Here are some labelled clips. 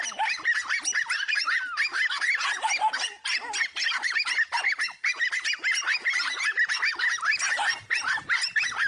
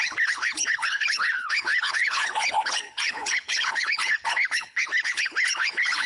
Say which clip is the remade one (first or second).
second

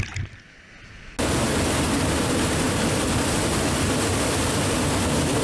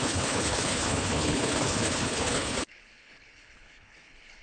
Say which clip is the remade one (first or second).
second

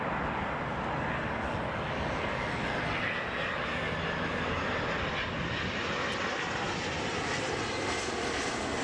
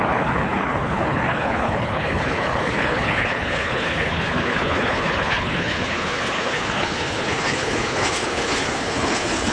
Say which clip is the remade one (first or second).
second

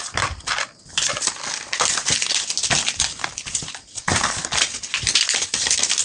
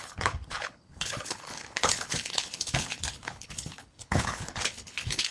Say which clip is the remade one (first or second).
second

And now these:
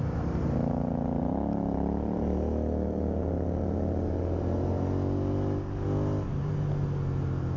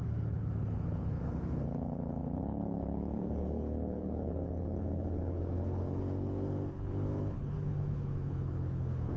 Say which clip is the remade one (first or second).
second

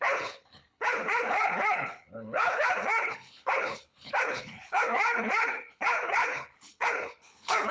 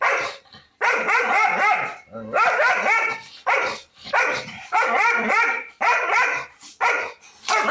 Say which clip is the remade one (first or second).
first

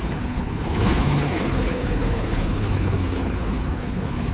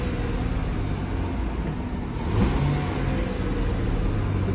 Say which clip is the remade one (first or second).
first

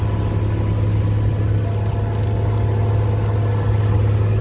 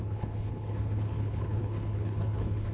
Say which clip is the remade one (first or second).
second